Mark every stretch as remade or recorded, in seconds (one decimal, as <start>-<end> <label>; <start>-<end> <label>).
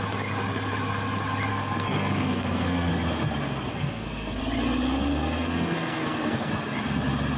0.0-1.5 recorded; 1.5-2.9 remade; 2.9-3.7 recorded; 3.7-4.4 remade; 4.4-5.1 recorded; 5.1-6.5 remade; 6.5-7.4 recorded